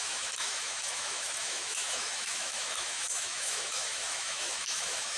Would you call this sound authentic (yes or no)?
no